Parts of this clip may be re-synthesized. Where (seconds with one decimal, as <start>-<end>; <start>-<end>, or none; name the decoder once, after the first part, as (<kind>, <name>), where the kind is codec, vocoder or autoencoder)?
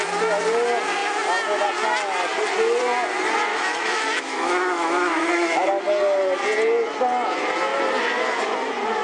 3.5-5.7 (autoencoder, DAC-VAE)